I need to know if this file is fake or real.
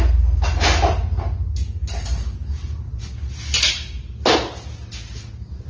real